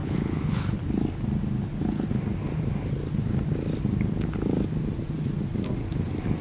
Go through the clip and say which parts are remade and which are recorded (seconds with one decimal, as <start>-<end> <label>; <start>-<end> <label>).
0.0-0.8 remade; 0.8-6.4 recorded